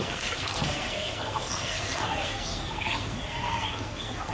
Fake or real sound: fake